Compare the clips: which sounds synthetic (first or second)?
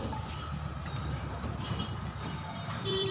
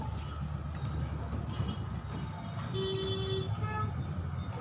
first